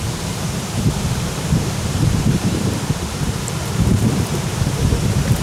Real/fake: fake